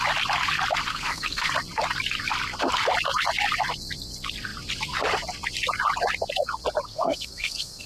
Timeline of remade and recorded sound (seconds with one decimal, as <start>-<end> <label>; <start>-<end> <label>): 0.0-0.9 recorded; 0.9-1.5 remade; 1.5-6.9 recorded; 6.9-7.9 remade